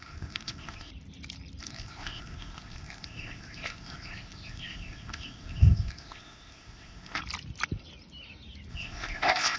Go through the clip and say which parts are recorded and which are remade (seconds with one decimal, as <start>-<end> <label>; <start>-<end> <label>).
0.0-0.9 remade; 0.9-1.6 recorded; 1.6-7.2 remade; 7.2-8.7 recorded; 8.7-9.6 remade